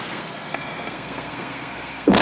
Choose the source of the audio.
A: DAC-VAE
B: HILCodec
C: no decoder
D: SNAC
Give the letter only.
D